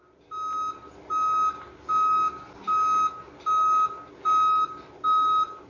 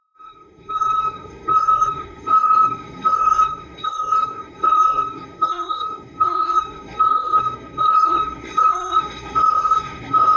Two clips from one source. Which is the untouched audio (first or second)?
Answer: first